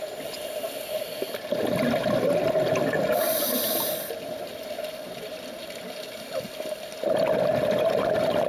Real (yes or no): yes